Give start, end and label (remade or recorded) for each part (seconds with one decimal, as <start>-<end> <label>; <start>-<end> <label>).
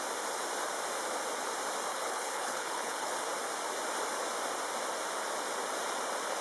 0.0-1.9 recorded; 1.9-3.1 remade; 3.1-6.4 recorded